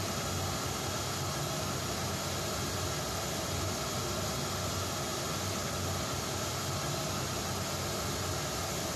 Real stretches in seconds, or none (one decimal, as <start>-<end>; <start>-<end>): 0.0-9.0